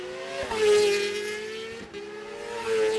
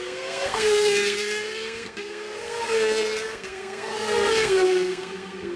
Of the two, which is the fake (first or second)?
second